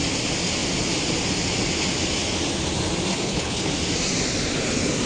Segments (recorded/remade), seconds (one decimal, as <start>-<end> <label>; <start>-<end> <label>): 0.0-3.1 recorded; 3.1-3.7 remade; 3.7-5.1 recorded